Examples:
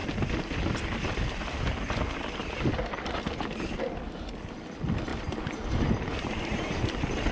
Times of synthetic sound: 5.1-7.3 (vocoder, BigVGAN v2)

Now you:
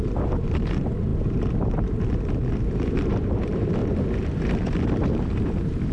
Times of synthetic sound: 0.0-3.8 (vocoder, BigVGAN v2); 5.1-5.9

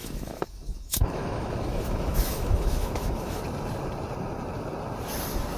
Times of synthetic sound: 0.0-3.4 (autoencoder, DAC-VAE)

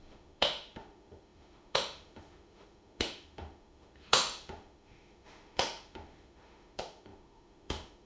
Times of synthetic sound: 0.0-8.1 (autoencoder, DAC-VAE)

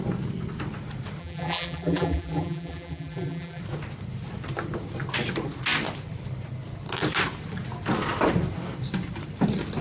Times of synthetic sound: 1.2-3.6 (vocoder, BigVGAN v2)